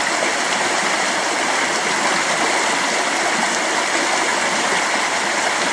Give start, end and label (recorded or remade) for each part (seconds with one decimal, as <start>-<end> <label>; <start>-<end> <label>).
0.0-5.7 recorded